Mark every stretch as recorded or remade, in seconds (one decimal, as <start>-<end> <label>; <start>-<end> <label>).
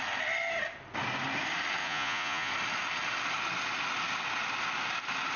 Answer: 0.0-1.8 recorded; 1.8-2.5 remade; 2.5-5.4 recorded